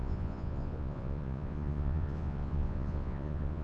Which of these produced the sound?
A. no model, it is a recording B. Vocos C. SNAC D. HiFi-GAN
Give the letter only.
B